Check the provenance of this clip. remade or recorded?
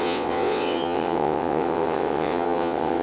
remade